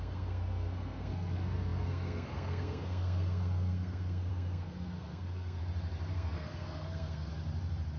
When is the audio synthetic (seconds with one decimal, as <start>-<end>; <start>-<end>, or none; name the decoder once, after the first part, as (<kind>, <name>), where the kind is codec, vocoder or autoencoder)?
0.0-5.6 (codec, SNAC); 6.1-7.3